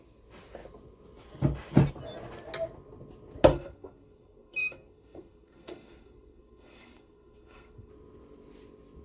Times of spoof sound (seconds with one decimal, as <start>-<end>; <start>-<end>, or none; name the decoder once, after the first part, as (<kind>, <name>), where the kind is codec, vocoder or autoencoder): 3.5-7.9 (codec, SNAC)